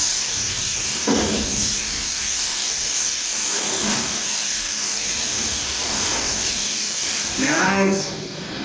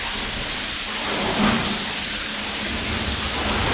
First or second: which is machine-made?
first